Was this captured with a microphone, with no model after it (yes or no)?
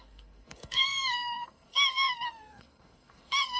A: no